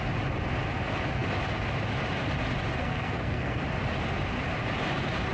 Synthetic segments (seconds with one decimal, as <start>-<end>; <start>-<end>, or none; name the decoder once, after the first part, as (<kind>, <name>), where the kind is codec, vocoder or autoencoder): 2.8-3.6 (codec, SNAC)